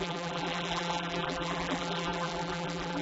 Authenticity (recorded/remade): remade